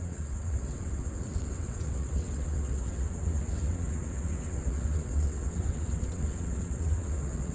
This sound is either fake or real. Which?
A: fake